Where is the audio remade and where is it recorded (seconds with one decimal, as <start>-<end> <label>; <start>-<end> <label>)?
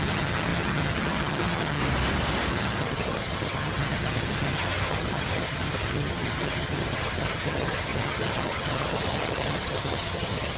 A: 0.0-1.8 remade; 1.8-2.5 recorded; 2.5-10.6 remade